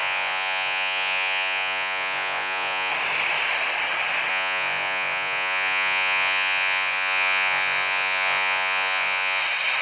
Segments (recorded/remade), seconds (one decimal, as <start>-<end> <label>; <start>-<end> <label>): 0.0-2.9 remade; 2.9-4.3 recorded; 4.3-9.4 remade; 9.4-9.8 recorded